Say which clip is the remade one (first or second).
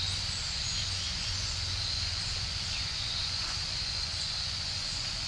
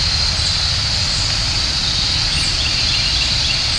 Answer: first